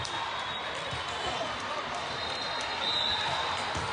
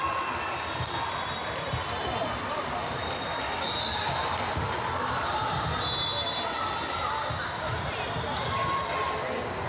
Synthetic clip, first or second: first